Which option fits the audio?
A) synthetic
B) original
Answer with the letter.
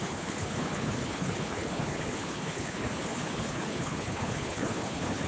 A